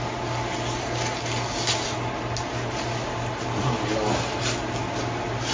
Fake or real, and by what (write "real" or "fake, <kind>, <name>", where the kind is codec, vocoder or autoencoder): real